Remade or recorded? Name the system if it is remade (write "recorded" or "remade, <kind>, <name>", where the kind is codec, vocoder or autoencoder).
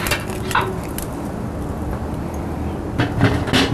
recorded